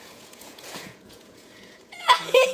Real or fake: fake